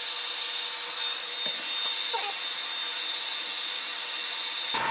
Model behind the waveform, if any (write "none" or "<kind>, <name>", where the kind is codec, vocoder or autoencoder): none